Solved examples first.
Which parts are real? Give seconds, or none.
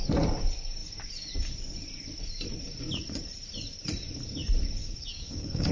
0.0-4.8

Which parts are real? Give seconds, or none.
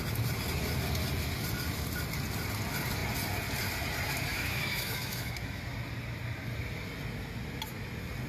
0.0-4.3; 5.6-8.3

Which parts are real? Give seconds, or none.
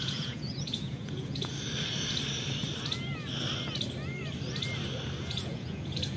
1.5-5.2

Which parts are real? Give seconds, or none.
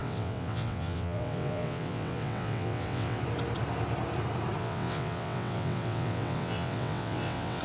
3.2-4.6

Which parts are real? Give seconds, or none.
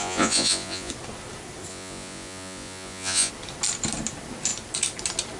0.9-1.7; 3.3-5.4